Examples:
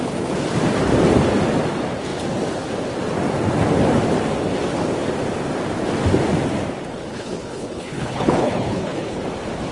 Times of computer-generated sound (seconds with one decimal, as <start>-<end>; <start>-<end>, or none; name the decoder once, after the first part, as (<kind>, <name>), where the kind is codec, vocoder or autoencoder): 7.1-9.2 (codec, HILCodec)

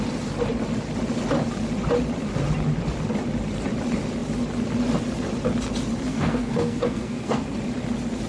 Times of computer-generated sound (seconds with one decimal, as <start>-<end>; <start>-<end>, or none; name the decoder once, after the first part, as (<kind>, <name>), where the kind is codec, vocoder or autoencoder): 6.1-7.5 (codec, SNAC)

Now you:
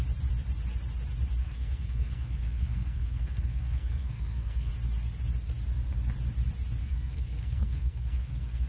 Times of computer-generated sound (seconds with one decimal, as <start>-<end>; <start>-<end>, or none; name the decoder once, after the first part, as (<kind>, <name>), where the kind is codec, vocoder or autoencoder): 1.4-4.7 (codec, SNAC); 6.8-8.7

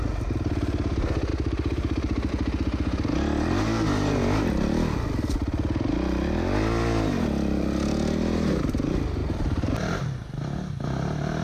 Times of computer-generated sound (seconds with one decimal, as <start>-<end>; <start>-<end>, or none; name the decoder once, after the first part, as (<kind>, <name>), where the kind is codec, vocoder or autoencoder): 1.3-2.3 (vocoder, BigVGAN v2)